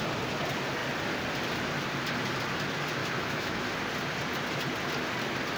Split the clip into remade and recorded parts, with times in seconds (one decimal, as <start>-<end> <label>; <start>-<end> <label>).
0.0-3.0 recorded; 3.0-3.6 remade; 3.6-5.6 recorded